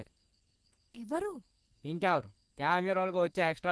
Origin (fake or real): fake